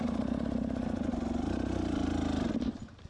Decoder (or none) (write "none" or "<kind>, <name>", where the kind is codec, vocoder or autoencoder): none